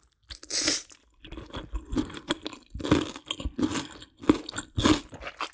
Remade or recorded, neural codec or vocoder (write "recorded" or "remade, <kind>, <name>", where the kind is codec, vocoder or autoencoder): recorded